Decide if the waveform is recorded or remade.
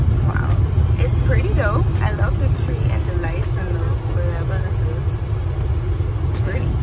recorded